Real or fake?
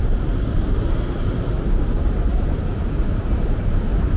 real